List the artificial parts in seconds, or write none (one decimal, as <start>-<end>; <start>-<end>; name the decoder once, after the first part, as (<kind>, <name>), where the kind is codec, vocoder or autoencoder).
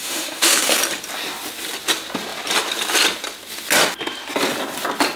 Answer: 0.0-0.8 (autoencoder, DAC-VAE)